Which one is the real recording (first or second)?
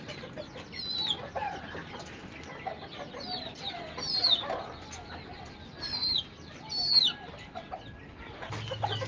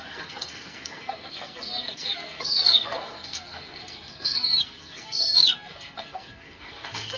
first